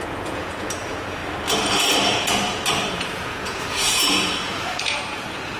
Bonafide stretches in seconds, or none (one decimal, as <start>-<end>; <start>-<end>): 1.2-2.9